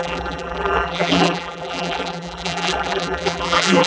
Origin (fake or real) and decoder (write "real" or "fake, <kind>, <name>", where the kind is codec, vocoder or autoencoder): fake, vocoder, BigVGAN v2